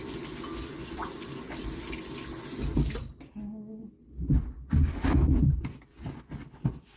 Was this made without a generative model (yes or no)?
yes